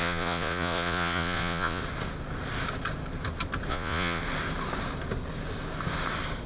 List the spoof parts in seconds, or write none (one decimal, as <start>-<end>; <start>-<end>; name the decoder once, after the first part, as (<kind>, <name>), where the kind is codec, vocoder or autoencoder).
0.0-1.8 (vocoder, Vocos); 3.7-4.2